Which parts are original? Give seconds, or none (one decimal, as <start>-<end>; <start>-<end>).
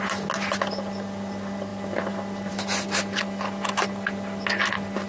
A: 0.0-5.1